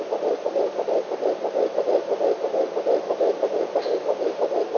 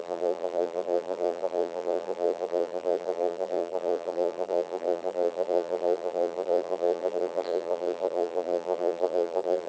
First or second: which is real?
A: first